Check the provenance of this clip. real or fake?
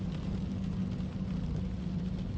real